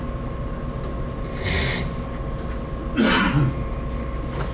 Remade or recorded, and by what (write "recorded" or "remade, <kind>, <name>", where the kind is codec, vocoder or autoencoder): recorded